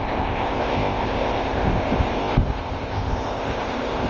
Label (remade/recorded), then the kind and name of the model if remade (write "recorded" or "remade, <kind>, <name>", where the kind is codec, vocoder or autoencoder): remade, codec, ZipCodec